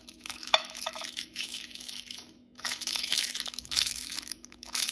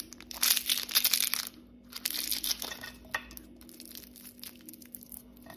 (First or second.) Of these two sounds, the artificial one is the first